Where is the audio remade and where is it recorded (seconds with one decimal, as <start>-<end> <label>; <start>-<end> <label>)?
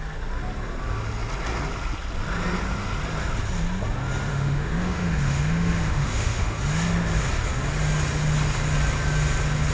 0.0-4.3 recorded; 4.3-6.6 remade; 6.6-9.7 recorded